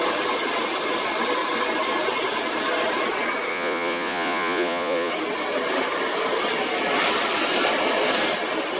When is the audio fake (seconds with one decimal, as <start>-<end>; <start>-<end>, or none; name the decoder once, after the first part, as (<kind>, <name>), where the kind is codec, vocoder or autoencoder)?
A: 3.5-5.1 (vocoder, Vocos)